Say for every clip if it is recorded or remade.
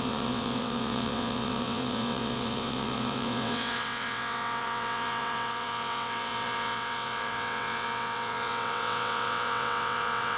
remade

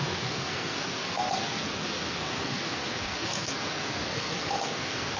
remade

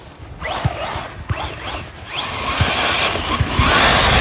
recorded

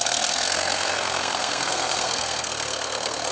remade